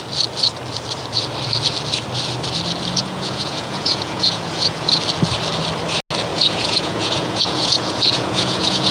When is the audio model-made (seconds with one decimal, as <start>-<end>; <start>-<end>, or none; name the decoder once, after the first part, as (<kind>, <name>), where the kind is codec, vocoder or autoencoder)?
3.0-4.9 (vocoder, Vocos); 6.3-8.9